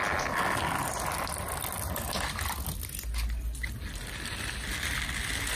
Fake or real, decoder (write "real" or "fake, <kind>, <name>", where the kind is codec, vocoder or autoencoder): real